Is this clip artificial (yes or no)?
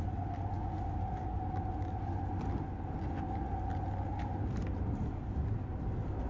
no